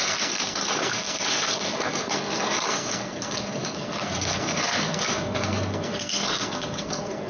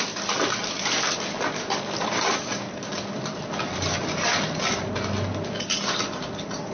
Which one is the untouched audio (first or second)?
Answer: second